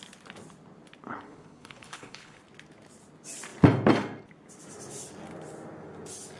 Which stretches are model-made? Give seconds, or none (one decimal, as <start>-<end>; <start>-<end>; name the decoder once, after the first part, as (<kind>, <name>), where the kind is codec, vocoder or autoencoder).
1.1-2.4 (codec, HILCodec)